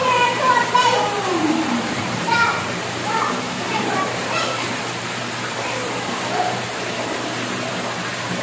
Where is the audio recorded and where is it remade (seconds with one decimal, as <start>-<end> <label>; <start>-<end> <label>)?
0.0-4.7 remade; 4.7-5.2 recorded; 5.2-7.7 remade; 7.7-8.4 recorded